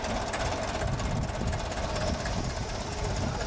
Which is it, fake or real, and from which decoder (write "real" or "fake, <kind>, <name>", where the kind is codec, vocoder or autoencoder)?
real